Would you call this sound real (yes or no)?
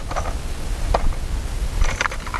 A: yes